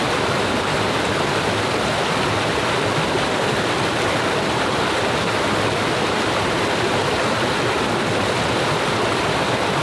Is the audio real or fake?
real